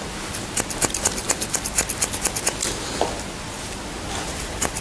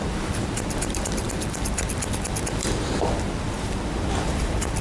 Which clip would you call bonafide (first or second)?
first